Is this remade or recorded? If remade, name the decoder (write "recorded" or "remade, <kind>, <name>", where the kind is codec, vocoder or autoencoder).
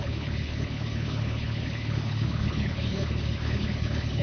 remade, codec, HILCodec